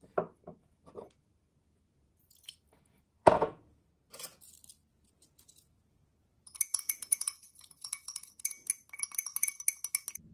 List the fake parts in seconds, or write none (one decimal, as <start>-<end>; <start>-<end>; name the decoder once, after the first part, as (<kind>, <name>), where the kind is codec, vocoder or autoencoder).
0.6-3.9 (vocoder, Vocos); 4.9-8.7